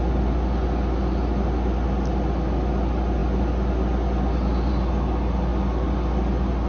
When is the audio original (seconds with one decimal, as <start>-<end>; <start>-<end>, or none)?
0.0-6.7